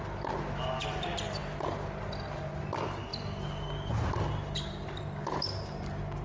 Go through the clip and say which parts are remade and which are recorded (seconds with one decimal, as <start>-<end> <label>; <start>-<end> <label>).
0.0-6.2 recorded